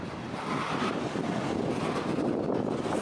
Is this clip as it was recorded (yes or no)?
yes